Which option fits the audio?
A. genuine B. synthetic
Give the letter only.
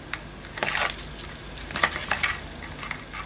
A